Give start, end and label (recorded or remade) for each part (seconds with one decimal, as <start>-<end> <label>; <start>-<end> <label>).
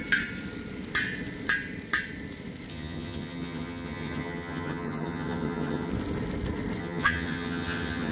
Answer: 0.0-2.7 recorded; 2.7-5.9 remade; 5.9-6.8 recorded; 6.8-8.1 remade